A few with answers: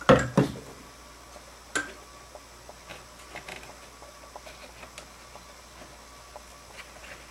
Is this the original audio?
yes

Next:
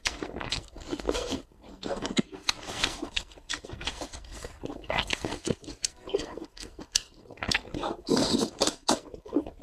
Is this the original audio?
no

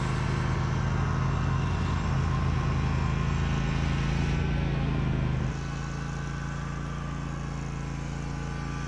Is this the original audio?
yes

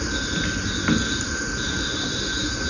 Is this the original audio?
yes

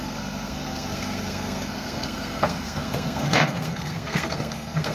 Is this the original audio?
no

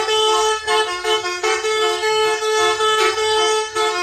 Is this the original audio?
no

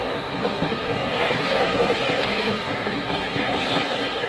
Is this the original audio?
no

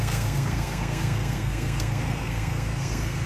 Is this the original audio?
no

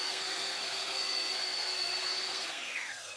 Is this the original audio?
no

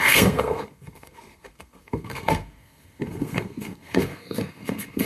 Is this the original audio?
no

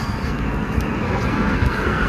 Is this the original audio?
no